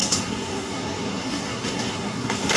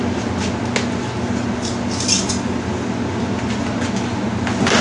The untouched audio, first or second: second